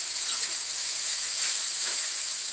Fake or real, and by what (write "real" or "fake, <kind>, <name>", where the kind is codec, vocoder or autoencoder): fake, autoencoder, DAC-VAE